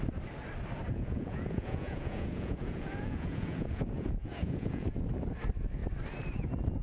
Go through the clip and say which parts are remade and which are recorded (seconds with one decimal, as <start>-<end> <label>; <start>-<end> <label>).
0.0-0.9 recorded; 0.9-5.0 remade; 5.0-6.8 recorded